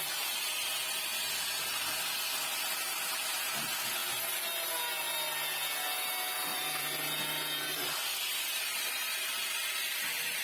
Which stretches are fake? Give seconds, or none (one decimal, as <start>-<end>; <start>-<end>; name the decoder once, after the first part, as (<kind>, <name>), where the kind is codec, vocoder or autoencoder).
6.5-9.3 (vocoder, BigVGAN v2)